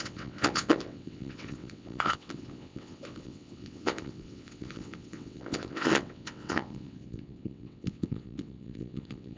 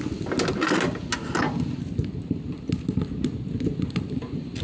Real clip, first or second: second